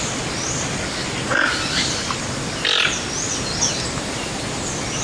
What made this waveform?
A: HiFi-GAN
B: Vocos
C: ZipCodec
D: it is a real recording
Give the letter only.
D